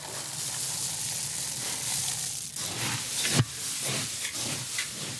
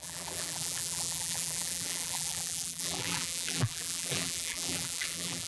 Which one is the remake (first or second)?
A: second